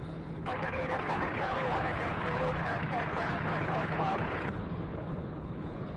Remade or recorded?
remade